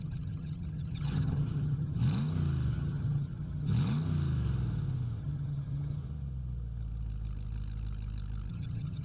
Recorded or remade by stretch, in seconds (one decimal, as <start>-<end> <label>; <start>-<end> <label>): 0.0-2.0 remade; 2.0-2.7 recorded; 2.7-3.7 remade; 3.7-5.2 recorded; 5.2-6.0 remade; 6.0-8.5 recorded; 8.5-9.0 remade